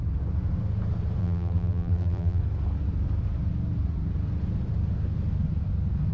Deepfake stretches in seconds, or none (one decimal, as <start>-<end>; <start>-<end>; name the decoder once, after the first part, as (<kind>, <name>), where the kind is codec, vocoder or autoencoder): 1.2-2.4 (vocoder, BigVGAN v2)